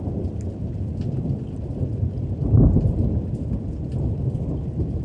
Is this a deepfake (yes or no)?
no